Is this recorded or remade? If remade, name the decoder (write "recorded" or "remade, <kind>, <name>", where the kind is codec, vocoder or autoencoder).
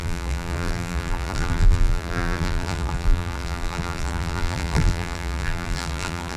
remade, vocoder, BigVGAN v2